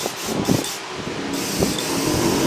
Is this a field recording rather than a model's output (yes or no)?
yes